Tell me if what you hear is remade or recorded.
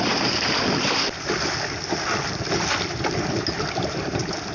recorded